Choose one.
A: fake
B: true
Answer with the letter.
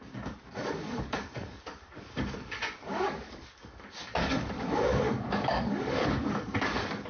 A